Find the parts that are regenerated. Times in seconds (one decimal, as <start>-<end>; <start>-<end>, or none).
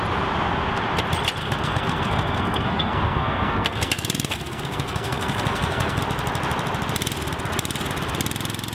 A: 1.4-6.0